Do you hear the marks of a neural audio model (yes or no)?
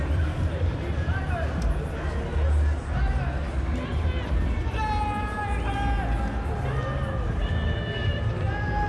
no